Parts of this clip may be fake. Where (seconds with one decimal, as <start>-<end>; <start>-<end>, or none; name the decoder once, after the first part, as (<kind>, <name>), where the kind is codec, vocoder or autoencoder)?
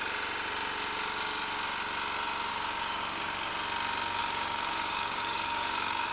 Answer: 2.5-3.5 (codec, DAC); 4.2-6.1